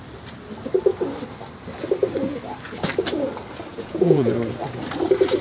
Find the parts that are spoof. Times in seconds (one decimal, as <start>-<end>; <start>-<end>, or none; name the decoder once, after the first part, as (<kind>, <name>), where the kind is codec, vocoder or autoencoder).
3.7-4.3 (vocoder, Vocos)